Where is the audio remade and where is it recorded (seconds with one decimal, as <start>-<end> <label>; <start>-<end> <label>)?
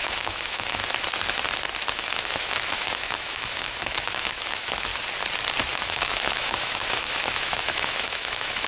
0.0-0.8 remade; 0.8-1.9 recorded; 1.9-4.9 remade; 4.9-5.7 recorded; 5.7-8.7 remade